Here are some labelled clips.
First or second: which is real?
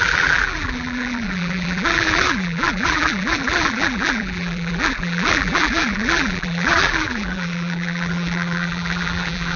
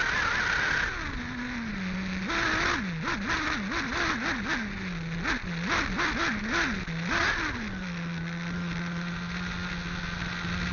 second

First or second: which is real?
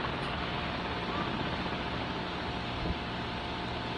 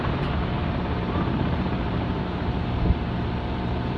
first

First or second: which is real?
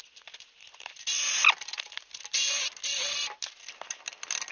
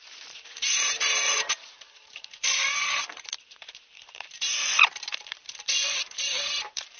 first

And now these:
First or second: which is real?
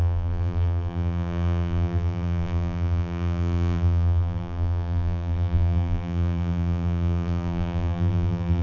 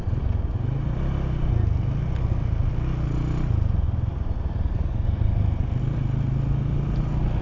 second